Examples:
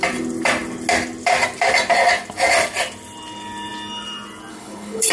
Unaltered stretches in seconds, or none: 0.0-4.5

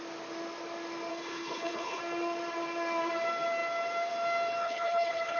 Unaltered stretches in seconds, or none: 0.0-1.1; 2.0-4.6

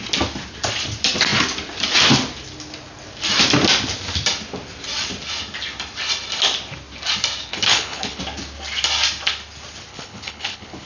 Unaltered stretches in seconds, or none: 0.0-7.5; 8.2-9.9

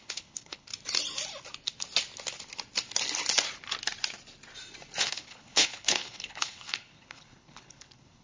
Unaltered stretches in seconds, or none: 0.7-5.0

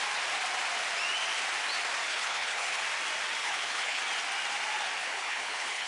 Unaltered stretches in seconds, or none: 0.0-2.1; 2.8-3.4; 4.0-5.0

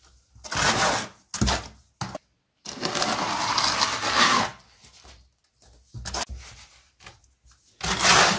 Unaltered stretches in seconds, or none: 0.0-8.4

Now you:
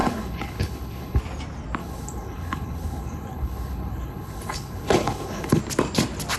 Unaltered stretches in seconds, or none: 1.2-1.8; 5.6-6.4